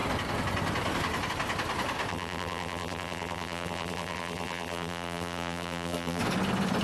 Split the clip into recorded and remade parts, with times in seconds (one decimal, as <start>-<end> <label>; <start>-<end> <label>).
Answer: 0.0-2.1 recorded; 2.1-6.2 remade; 6.2-6.8 recorded

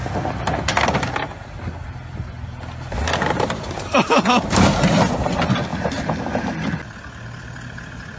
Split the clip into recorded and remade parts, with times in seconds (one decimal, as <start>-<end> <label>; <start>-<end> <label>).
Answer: 0.0-0.7 recorded; 0.7-1.8 remade; 1.8-5.7 recorded; 5.7-6.2 remade; 6.2-8.2 recorded

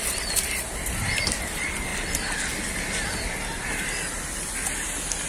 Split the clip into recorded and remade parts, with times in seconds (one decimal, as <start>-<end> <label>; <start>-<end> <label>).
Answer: 0.0-1.9 remade; 1.9-5.3 recorded